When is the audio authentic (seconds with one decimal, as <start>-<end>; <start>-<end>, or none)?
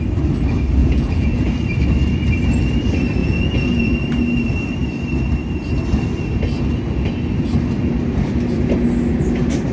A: 0.0-0.8; 1.4-3.2; 3.9-9.7